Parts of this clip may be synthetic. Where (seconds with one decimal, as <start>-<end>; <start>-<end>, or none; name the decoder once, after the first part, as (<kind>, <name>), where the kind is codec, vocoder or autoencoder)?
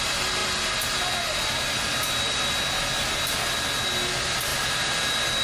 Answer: 4.5-5.0 (vocoder, BigVGAN v2)